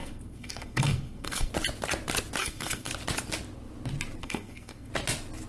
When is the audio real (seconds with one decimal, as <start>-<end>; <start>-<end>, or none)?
1.5-2.4; 2.9-4.2; 4.9-5.5